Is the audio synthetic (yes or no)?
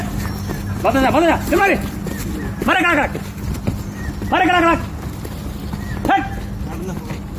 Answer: no